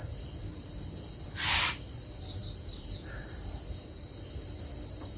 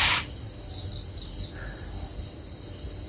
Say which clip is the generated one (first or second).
first